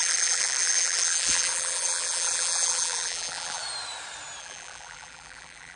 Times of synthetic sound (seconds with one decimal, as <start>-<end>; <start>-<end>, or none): 0.0-3.6; 4.4-5.8